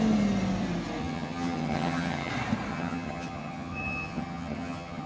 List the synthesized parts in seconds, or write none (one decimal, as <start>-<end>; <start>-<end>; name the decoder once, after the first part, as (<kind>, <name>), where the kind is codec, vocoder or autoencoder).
1.0-2.3 (vocoder, HiFi-GAN); 2.7-5.1